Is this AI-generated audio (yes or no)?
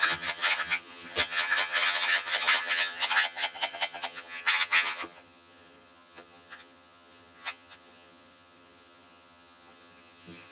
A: yes